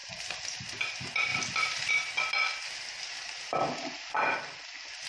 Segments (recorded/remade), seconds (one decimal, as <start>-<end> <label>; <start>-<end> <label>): 0.0-5.1 recorded